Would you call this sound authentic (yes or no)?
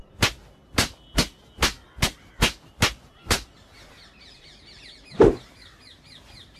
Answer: yes